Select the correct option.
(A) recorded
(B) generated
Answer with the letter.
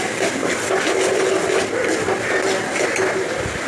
A